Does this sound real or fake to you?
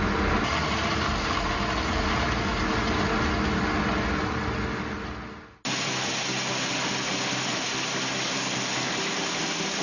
real